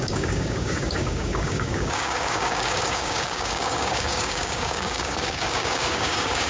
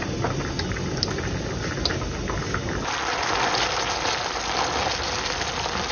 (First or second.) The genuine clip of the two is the second